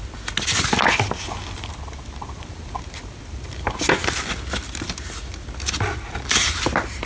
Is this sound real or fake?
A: real